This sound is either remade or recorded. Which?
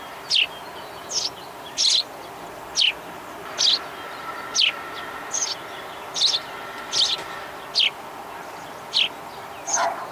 recorded